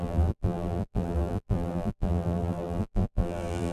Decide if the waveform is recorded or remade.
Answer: remade